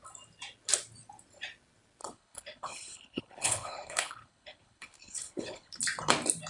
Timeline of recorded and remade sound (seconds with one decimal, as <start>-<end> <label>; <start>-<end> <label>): 0.0-2.0 recorded; 2.0-5.8 remade; 5.8-6.5 recorded